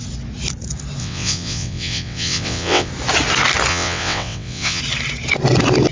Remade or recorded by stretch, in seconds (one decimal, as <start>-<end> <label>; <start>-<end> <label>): 0.0-1.0 recorded; 1.0-2.9 remade; 2.9-3.7 recorded; 3.7-4.8 remade; 4.8-5.9 recorded